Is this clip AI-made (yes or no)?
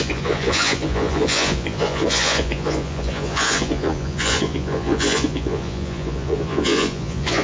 yes